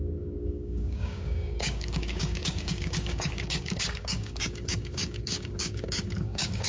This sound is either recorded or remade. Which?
remade